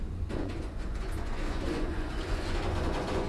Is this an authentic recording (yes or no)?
no